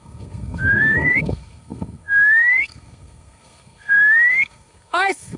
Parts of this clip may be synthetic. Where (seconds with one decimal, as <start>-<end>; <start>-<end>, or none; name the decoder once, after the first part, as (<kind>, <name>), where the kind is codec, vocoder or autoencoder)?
0.0-5.4 (codec, SNAC)